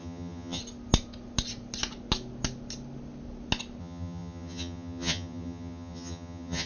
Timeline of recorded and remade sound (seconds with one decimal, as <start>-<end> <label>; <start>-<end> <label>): 0.0-0.6 remade; 0.6-3.8 recorded; 3.8-6.7 remade